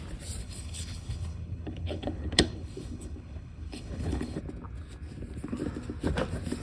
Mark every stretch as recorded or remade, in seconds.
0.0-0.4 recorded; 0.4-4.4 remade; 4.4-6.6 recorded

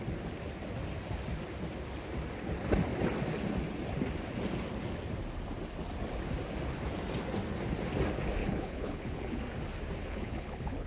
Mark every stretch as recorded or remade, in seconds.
0.0-8.4 recorded; 8.4-9.4 remade; 9.4-10.0 recorded; 10.0-10.9 remade

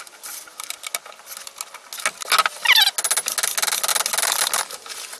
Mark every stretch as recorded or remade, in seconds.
0.0-5.2 recorded

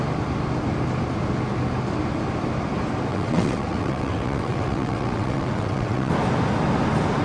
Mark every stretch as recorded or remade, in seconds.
0.0-3.1 recorded; 3.1-6.1 remade; 6.1-7.2 recorded